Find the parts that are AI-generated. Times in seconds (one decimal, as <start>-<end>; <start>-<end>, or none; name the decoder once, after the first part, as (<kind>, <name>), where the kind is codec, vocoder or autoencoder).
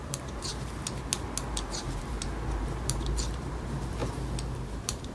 0.0-0.5 (vocoder, BigVGAN v2); 2.0-4.0; 4.5-5.1